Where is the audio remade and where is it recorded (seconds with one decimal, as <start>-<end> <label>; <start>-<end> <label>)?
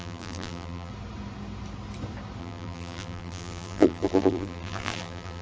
0.0-0.9 remade; 0.9-2.4 recorded; 2.4-5.4 remade